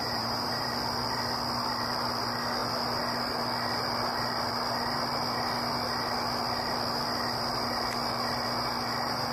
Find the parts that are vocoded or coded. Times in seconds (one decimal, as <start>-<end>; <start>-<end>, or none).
0.0-0.7